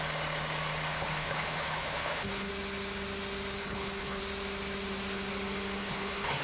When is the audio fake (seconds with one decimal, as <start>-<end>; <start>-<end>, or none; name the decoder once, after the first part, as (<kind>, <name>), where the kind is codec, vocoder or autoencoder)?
0.9-2.5 (codec, HILCodec); 3.6-4.2; 5.8-6.4